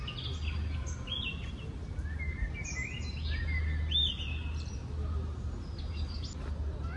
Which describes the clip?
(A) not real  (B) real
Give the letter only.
B